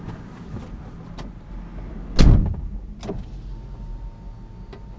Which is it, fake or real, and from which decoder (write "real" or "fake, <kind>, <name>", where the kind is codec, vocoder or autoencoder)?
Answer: real